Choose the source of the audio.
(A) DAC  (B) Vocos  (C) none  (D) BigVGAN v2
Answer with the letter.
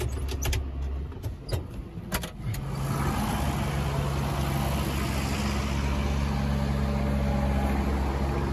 C